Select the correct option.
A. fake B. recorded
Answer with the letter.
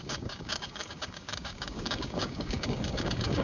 A